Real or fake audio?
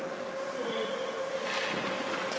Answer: real